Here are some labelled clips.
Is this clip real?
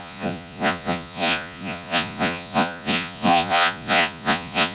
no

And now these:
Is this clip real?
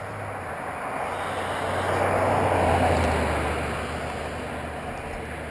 yes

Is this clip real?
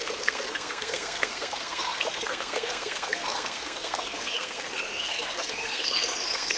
no